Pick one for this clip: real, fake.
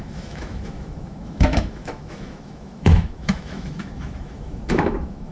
fake